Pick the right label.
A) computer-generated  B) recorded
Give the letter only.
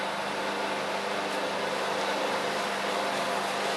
B